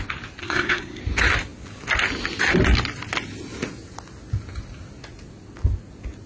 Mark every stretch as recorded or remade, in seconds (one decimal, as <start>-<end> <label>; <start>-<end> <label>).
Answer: 0.0-0.4 recorded; 0.4-1.0 remade; 1.0-6.3 recorded